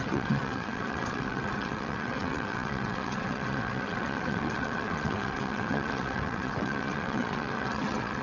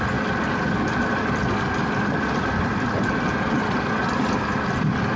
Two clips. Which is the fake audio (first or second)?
first